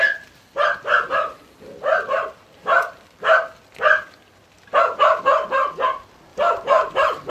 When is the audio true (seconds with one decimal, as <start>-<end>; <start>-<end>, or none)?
0.0-1.9; 3.6-6.3